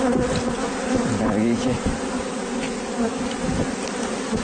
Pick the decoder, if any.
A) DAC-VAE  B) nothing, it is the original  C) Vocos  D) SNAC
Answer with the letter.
B